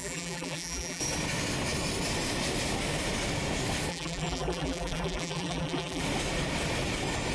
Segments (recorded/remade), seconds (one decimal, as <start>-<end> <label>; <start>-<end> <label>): 0.0-1.0 remade; 1.0-3.9 recorded; 3.9-6.0 remade; 6.0-7.3 recorded